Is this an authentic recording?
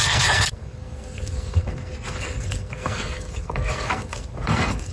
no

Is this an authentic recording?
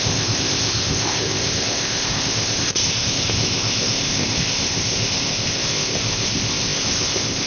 no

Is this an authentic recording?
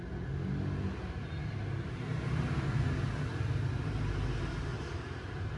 yes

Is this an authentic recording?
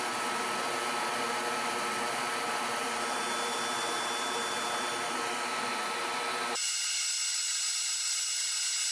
yes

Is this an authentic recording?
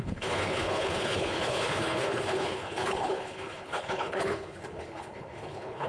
no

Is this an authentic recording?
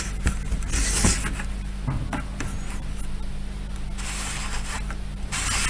yes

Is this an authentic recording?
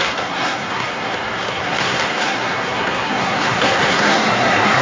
no